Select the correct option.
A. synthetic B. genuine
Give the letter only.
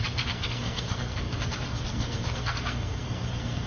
A